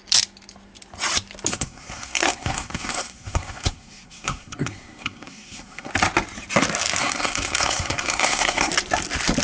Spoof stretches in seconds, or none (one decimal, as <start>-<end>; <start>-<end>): 1.5-5.9; 7.0-8.7